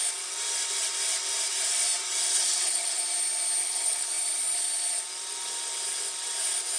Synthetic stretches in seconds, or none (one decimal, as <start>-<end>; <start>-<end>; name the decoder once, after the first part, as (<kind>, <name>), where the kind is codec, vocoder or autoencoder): 2.3-3.0 (codec, HILCodec); 3.6-4.1